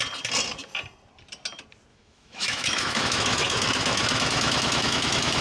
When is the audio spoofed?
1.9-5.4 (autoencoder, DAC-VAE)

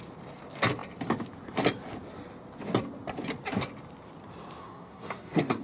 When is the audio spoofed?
4.6-5.6 (codec, SNAC)

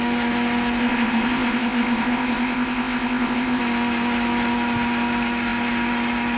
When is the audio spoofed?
0.8-3.6 (codec, ZipCodec)

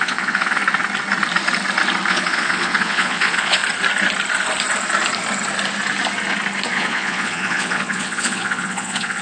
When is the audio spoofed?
0.0-0.6 (vocoder, Vocos); 2.1-3.6; 6.7-9.2

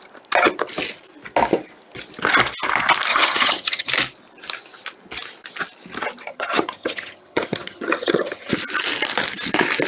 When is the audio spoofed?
3.1-3.9 (vocoder, HiFi-GAN); 6.3-8.5